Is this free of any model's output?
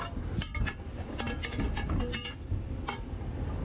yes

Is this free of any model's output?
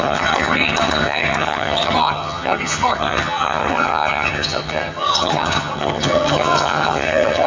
no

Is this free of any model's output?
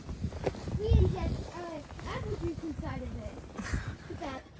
yes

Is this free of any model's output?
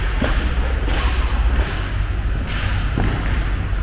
yes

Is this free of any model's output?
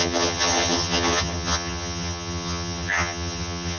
no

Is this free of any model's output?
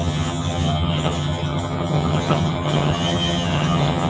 no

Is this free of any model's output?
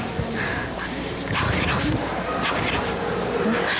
yes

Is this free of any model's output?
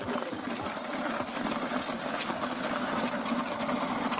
yes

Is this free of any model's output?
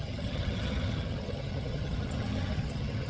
no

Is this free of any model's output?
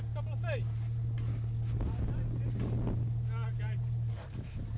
yes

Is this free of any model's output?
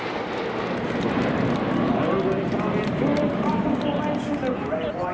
yes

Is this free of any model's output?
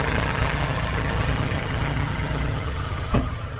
no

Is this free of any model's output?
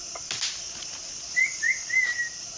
yes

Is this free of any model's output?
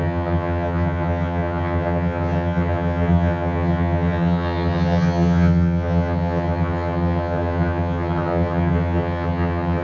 no